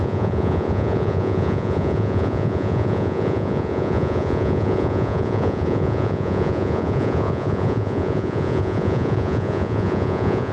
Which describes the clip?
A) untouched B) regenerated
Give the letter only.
B